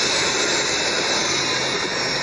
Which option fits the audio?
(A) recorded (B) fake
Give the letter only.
A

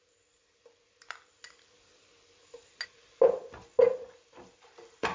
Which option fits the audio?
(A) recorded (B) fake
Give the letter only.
A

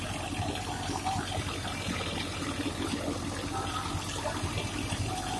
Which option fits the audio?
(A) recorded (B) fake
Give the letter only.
A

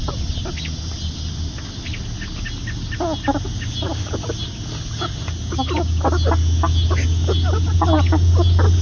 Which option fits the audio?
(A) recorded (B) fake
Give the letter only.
A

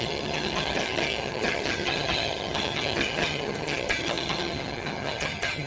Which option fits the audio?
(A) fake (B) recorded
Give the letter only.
A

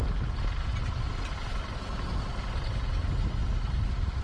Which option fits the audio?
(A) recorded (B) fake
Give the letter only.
A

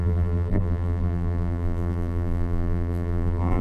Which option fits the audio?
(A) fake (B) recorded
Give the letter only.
A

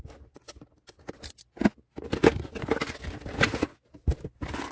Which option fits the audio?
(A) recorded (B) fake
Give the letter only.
A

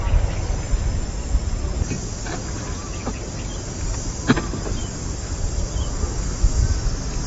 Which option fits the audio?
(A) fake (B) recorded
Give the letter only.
B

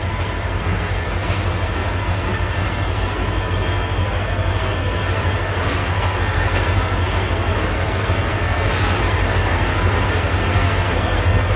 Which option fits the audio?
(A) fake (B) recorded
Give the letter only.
A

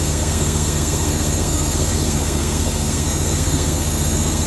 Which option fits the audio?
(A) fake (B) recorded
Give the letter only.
A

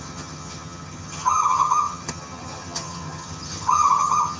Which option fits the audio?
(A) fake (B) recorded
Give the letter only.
A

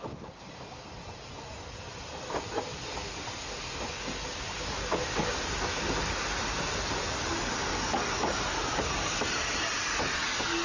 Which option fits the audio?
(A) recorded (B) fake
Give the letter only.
A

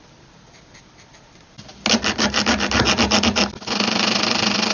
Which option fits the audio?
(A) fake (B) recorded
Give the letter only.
B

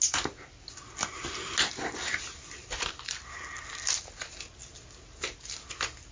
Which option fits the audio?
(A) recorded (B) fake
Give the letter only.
A